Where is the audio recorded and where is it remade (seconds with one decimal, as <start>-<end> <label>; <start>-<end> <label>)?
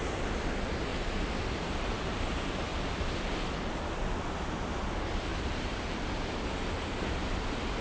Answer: 0.0-0.9 recorded; 0.9-2.2 remade; 2.2-2.7 recorded; 2.7-3.7 remade; 3.7-5.3 recorded; 5.3-6.0 remade; 6.0-7.8 recorded